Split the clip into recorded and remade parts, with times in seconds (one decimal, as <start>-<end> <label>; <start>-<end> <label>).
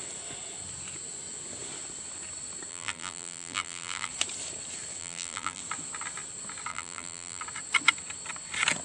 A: 0.0-2.7 recorded; 2.7-4.1 remade; 4.1-5.0 recorded; 5.0-5.6 remade; 5.6-6.7 recorded; 6.7-7.4 remade; 7.4-8.8 recorded